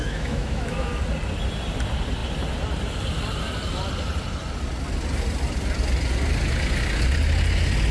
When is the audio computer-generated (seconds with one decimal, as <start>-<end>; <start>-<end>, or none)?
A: 0.0-0.9